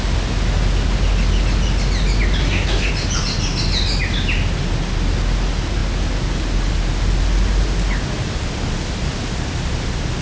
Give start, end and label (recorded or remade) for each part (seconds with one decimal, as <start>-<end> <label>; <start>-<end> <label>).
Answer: 0.0-2.4 recorded; 2.4-2.9 remade; 2.9-10.2 recorded